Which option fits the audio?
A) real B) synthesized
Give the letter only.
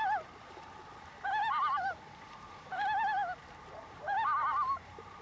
B